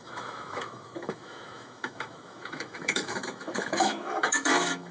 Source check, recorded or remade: remade